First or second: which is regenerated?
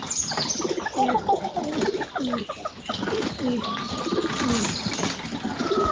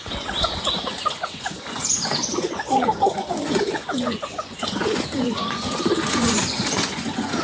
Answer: second